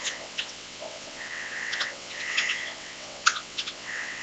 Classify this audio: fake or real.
fake